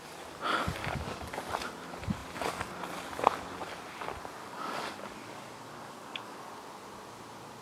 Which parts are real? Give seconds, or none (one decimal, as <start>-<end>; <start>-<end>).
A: 0.0-0.8; 1.4-4.4; 6.5-7.6

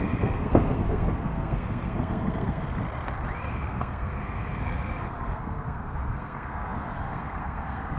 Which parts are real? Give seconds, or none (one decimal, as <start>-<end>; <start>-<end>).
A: 2.8-3.5

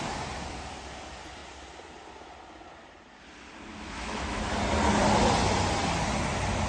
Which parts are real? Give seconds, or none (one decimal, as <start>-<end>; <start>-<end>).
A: 0.0-3.7; 4.5-6.7

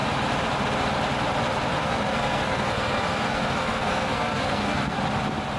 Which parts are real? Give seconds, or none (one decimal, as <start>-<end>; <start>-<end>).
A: 0.0-1.8; 5.0-5.6

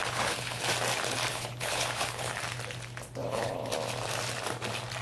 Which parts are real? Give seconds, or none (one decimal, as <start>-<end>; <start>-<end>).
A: 0.6-1.3; 2.4-3.2; 3.7-5.0

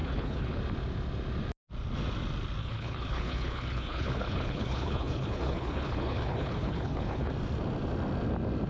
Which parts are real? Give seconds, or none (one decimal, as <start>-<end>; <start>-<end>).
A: 0.6-2.6; 7.3-8.7